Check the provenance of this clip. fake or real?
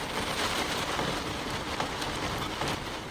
fake